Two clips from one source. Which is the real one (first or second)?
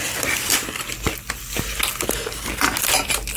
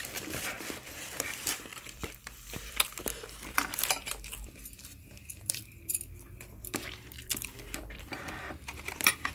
first